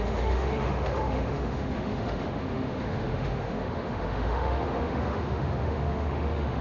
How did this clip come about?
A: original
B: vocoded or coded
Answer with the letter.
B